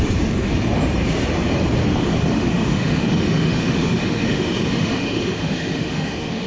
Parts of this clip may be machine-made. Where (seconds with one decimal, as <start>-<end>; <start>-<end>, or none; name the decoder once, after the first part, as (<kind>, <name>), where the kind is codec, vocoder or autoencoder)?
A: 2.3-6.5 (autoencoder, DAC-VAE)

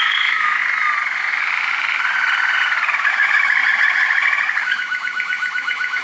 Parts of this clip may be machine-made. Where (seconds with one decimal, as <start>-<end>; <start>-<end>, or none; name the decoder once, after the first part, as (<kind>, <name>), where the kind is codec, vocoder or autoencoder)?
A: 0.0-0.6 (autoencoder, DAC-VAE); 3.1-3.6; 4.6-6.0

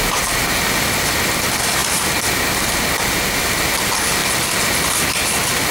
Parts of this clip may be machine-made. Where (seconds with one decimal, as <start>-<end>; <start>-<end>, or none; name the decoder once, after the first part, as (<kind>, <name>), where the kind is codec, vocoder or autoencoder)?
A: none